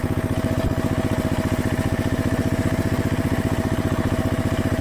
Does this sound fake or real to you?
real